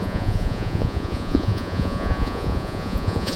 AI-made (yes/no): yes